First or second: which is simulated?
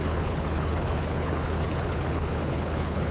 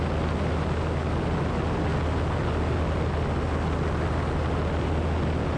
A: first